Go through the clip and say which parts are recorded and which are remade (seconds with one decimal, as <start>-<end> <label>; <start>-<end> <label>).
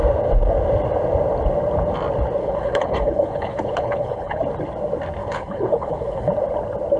0.0-2.4 recorded; 2.4-4.4 remade; 4.4-5.2 recorded; 5.2-6.3 remade; 6.3-7.0 recorded